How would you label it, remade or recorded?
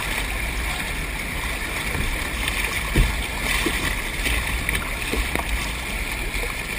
recorded